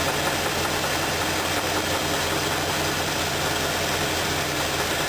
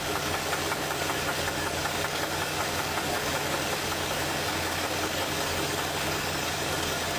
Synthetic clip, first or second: second